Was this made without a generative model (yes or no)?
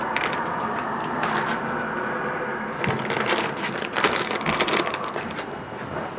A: yes